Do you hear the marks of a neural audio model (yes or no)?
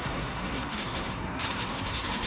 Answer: yes